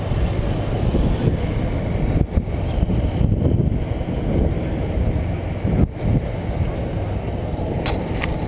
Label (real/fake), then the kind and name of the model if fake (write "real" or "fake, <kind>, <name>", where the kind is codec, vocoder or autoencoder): real